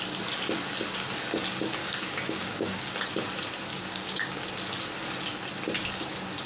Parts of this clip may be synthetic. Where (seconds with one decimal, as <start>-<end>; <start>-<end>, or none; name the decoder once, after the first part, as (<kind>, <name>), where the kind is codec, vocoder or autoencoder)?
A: 1.8-2.9 (codec, DAC); 3.7-4.5